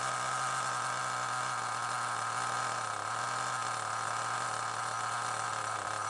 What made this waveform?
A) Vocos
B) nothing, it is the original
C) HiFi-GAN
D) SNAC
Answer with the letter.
B